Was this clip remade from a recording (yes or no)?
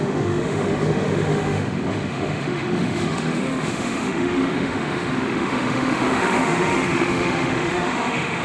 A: yes